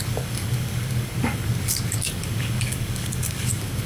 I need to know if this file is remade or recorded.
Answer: remade